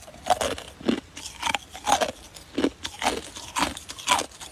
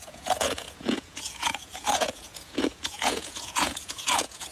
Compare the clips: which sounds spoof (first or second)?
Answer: second